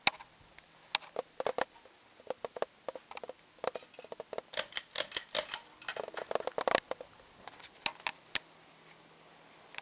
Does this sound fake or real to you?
real